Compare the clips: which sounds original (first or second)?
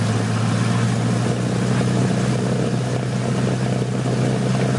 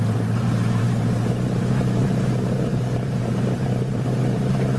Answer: first